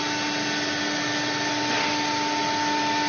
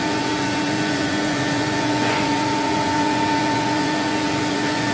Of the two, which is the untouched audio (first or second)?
first